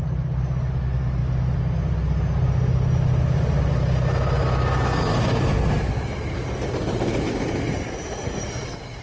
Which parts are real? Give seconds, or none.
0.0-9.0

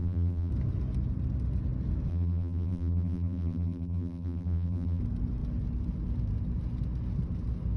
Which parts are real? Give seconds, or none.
0.5-2.1; 5.0-7.8

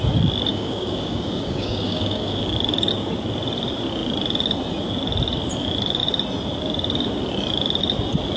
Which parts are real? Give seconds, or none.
0.0-0.5; 3.1-8.4

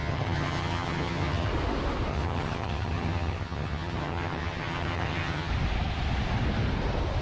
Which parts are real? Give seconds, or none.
1.5-2.1; 5.5-7.2